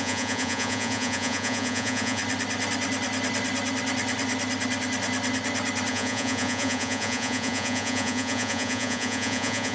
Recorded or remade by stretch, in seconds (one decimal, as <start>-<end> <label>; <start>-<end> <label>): 0.0-2.2 remade; 2.2-5.9 recorded; 5.9-9.7 remade